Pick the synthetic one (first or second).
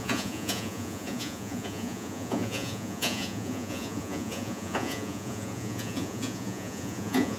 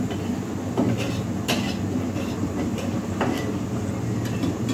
first